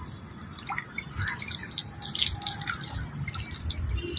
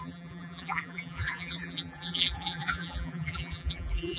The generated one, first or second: second